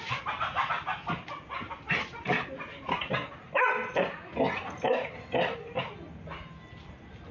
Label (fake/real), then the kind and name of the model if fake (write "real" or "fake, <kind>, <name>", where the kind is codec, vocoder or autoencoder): real